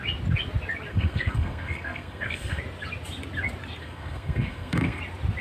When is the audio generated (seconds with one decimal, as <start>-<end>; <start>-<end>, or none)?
0.9-2.6; 3.8-5.0

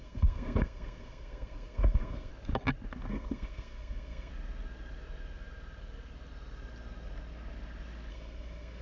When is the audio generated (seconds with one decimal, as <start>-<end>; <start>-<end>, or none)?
0.0-2.3; 3.1-4.3; 8.1-8.8

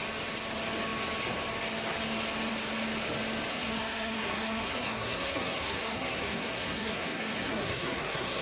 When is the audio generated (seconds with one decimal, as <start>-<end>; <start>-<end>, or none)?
3.5-8.4

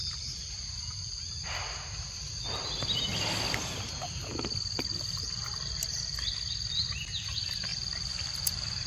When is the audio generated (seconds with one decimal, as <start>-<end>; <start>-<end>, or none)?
none

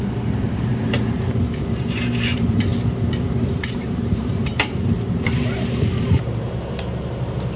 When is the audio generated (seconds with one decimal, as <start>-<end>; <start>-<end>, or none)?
0.0-2.7; 3.3-7.6

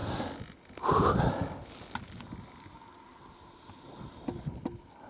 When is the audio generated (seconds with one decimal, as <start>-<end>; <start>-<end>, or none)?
none

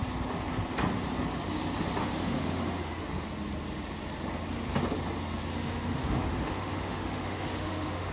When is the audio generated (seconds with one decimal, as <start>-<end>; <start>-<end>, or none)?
2.0-3.0; 5.5-8.1